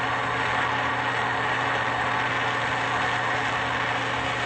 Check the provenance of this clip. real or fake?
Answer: real